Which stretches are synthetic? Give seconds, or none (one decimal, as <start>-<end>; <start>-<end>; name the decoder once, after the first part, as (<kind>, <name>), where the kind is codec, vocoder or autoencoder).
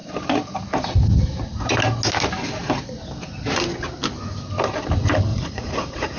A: 5.3-6.2 (vocoder, Vocos)